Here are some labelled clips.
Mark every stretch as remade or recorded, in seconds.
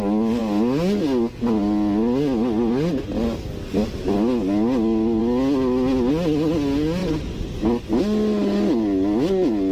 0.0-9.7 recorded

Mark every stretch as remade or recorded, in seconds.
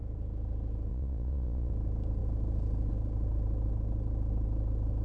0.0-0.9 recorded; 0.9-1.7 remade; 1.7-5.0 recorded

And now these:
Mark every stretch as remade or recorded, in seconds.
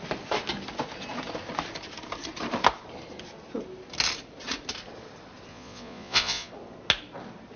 0.0-5.5 recorded; 5.5-6.5 remade; 6.5-7.6 recorded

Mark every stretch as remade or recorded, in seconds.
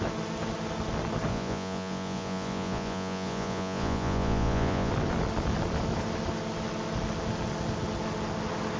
0.0-1.3 recorded; 1.3-4.9 remade; 4.9-8.8 recorded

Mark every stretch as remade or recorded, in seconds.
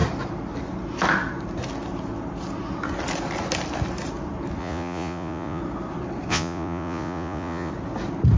0.0-4.6 recorded; 4.6-5.6 remade; 5.6-6.3 recorded; 6.3-7.7 remade; 7.7-8.4 recorded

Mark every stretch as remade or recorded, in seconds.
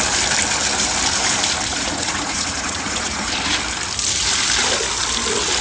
0.0-1.7 recorded; 1.7-3.3 remade; 3.3-5.6 recorded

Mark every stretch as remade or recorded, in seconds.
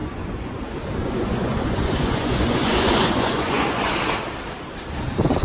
0.0-0.6 remade; 0.6-1.0 recorded; 1.0-3.9 remade; 3.9-5.4 recorded